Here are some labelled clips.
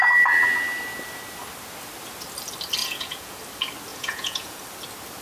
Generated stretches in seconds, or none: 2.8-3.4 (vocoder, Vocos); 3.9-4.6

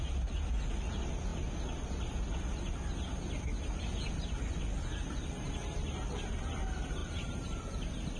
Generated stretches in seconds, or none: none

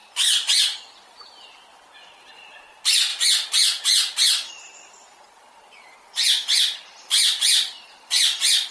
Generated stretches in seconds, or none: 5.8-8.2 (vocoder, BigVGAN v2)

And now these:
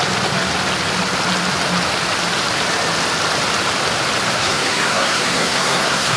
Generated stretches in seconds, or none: 4.3-6.2 (codec, SNAC)